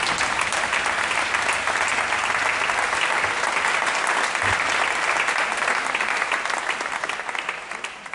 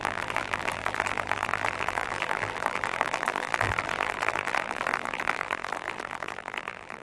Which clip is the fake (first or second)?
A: second